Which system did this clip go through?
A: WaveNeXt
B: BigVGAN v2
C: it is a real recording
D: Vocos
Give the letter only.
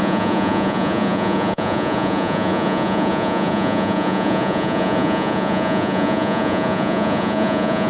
D